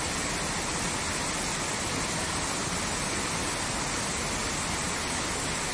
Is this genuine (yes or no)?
yes